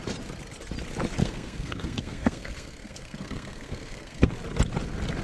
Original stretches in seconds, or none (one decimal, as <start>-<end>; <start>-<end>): 0.0-1.2; 4.3-5.2